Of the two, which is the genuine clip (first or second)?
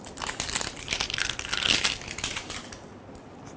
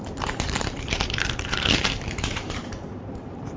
first